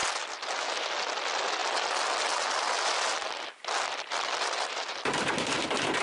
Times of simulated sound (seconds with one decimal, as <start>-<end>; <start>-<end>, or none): none